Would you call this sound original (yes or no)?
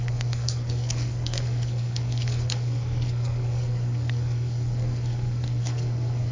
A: no